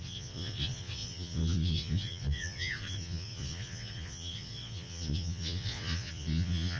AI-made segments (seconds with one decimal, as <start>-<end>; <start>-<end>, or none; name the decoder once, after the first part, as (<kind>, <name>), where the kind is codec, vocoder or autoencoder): 0.0-6.8 (vocoder, Vocos)